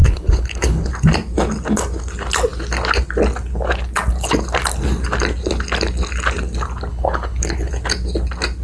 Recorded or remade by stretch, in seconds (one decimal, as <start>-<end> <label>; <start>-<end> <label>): 0.0-0.9 remade; 0.9-6.9 recorded; 6.9-7.7 remade; 7.7-8.6 recorded